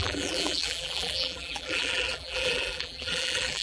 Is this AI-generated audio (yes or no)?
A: yes